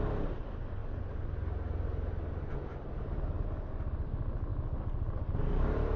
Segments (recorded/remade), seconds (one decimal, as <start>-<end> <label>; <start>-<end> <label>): 0.0-0.8 remade; 0.8-3.7 recorded; 3.7-6.0 remade